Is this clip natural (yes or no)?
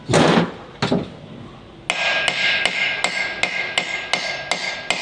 yes